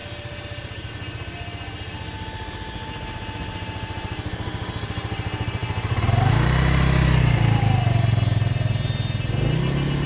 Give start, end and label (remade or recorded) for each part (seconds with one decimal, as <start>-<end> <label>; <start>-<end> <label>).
0.0-10.1 recorded